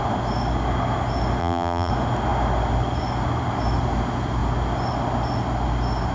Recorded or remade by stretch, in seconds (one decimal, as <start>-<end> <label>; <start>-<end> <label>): 0.0-1.4 recorded; 1.4-1.9 remade; 1.9-6.1 recorded